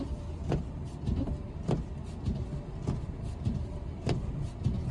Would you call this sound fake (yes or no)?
no